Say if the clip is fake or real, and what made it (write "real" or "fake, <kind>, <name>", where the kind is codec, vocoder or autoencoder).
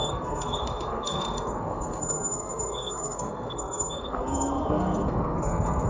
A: fake, codec, SNAC